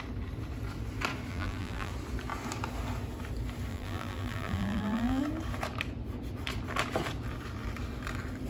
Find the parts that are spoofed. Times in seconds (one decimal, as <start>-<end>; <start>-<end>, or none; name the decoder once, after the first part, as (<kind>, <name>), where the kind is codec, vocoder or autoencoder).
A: 1.3-1.9 (vocoder, BigVGAN v2); 3.7-5.2